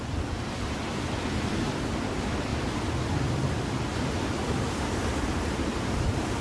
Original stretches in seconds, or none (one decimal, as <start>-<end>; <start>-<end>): 0.0-6.4